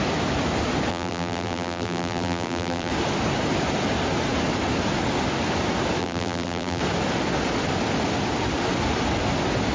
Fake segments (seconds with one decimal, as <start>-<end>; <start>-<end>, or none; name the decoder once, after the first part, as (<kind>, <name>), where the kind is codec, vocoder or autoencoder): 0.9-2.9 (vocoder, BigVGAN v2); 6.0-6.8